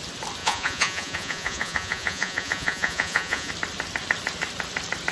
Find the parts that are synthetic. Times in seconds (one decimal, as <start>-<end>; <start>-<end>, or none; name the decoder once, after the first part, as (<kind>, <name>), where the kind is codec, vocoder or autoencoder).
0.4-3.5 (vocoder, Vocos)